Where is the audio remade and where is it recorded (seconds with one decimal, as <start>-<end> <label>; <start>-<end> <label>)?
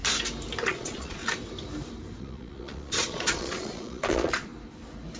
0.0-0.7 recorded; 0.7-1.2 remade; 1.2-2.2 recorded; 2.2-4.5 remade; 4.5-5.2 recorded